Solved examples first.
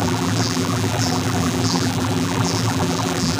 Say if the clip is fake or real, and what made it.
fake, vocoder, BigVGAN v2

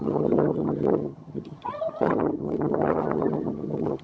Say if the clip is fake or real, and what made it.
fake, vocoder, HiFi-GAN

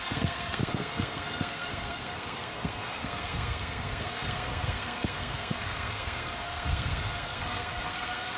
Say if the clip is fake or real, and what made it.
fake, codec, SNAC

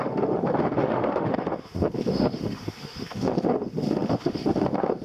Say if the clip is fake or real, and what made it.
fake, autoencoder, DAC-VAE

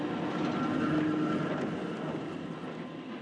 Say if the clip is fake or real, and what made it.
real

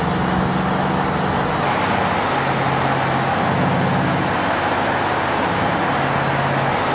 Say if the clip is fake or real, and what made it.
real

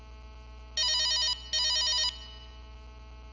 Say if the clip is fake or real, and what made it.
real